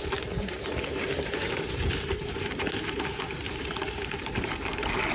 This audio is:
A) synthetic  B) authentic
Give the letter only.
A